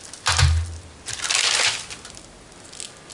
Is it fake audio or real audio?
real